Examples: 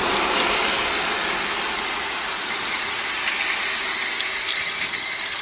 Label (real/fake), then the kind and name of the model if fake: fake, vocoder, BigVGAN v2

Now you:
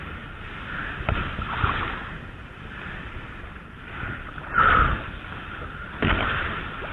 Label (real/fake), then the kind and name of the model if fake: real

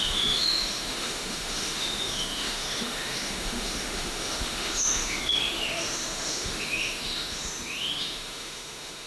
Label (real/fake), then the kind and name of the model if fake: fake, autoencoder, DAC-VAE